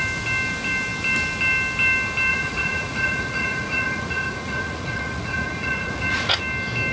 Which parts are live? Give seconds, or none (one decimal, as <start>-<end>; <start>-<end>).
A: 0.0-2.3; 6.4-6.9